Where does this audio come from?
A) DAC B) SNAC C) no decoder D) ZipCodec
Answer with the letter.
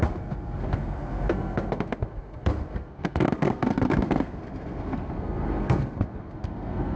B